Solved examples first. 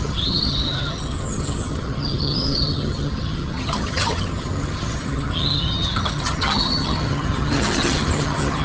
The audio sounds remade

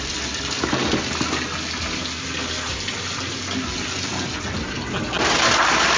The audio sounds recorded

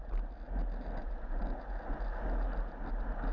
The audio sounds recorded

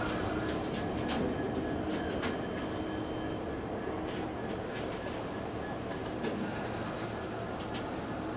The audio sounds recorded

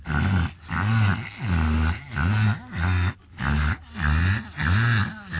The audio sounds recorded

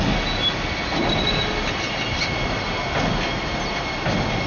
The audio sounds recorded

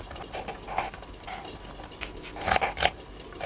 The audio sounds recorded